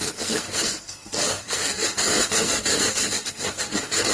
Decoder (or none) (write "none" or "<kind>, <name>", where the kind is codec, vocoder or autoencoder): codec, SNAC